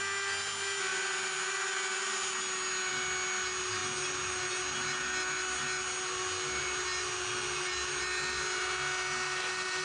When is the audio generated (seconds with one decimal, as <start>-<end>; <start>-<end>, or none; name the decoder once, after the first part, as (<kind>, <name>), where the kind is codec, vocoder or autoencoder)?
none